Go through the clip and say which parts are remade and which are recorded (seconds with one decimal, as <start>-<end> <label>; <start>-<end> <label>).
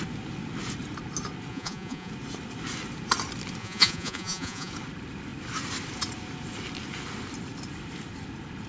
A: 0.0-1.5 recorded; 1.5-2.1 remade; 2.1-3.6 recorded; 3.6-4.7 remade; 4.7-8.7 recorded